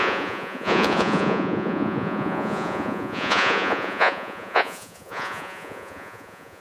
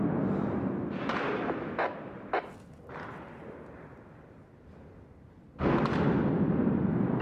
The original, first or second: second